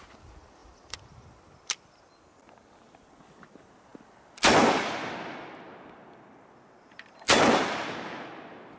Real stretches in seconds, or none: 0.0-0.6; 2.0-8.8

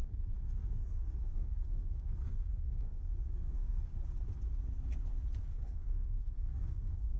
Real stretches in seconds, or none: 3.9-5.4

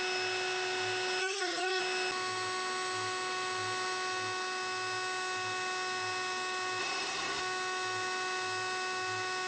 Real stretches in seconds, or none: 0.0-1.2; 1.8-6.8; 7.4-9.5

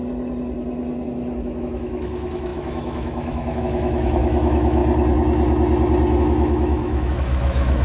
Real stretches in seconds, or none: 0.0-1.6; 4.8-6.2

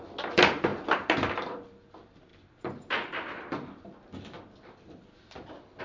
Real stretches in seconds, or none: 2.3-5.8